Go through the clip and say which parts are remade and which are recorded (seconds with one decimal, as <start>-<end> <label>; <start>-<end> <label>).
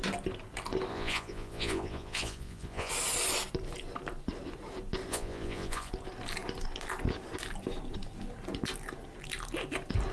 0.0-0.9 recorded; 0.9-2.9 remade; 2.9-5.1 recorded; 5.1-5.9 remade; 5.9-10.1 recorded